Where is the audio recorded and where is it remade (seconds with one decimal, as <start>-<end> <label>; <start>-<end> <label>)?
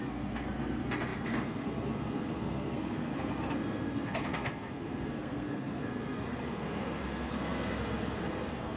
0.0-8.8 remade